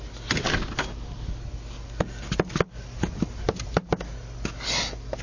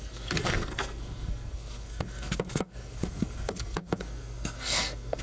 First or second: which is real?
first